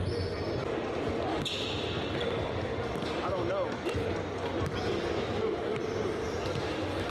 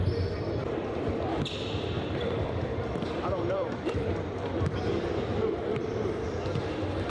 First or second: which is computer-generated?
second